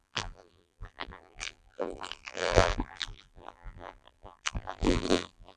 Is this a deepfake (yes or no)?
yes